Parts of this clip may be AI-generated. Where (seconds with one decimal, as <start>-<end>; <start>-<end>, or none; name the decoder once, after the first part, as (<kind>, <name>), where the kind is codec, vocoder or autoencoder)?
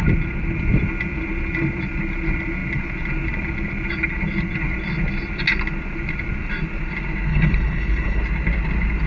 7.3-8.2 (codec, HILCodec)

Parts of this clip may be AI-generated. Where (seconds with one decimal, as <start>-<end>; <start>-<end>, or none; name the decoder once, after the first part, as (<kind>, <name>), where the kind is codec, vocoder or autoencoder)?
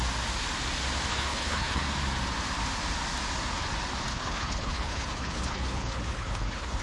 1.1-1.8 (codec, HILCodec); 4.1-6.8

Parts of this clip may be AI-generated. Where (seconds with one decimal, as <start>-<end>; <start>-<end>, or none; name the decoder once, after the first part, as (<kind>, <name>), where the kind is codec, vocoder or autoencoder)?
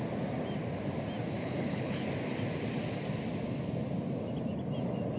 1.4-2.1 (codec, HILCodec)